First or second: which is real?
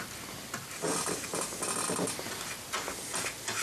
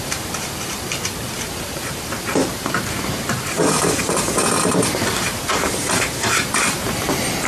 first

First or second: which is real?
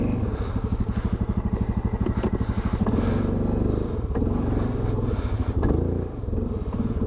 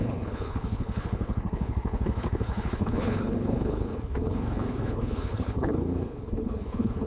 first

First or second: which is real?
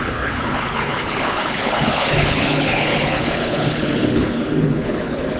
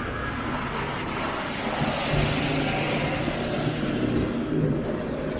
second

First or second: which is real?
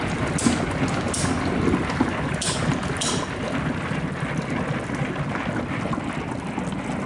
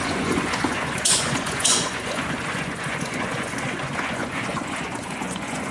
first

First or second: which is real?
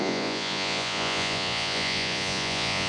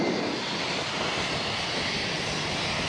second